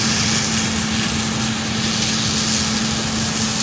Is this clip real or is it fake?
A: real